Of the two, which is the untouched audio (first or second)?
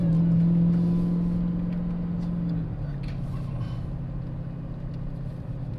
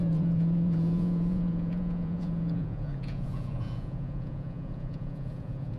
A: first